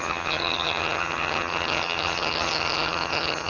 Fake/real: fake